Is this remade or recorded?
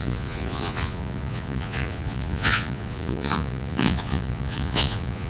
remade